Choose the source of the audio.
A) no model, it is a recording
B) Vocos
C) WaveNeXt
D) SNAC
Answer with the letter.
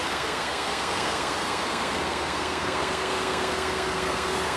D